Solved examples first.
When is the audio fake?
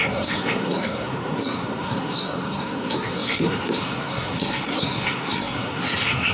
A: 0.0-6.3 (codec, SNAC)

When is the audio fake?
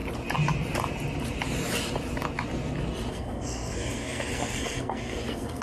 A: 3.1-5.6 (codec, SNAC)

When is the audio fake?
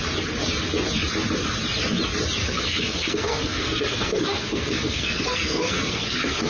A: 2.4-6.5 (codec, SNAC)